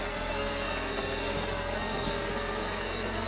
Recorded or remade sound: remade